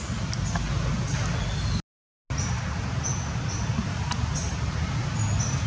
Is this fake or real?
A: real